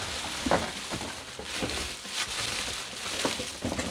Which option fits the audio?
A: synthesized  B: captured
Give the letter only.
B